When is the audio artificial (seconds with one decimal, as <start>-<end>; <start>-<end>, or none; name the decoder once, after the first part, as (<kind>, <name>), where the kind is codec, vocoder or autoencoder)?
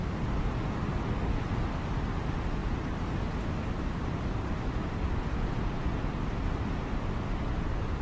0.9-1.6 (vocoder, BigVGAN v2); 2.6-4.5